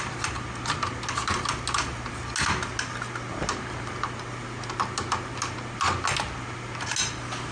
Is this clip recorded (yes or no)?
yes